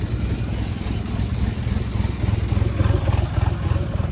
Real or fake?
real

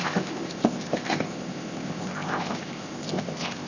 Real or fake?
fake